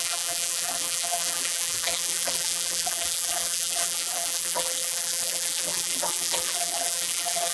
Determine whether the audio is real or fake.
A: fake